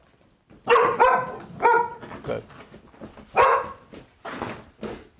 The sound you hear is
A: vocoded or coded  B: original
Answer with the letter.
B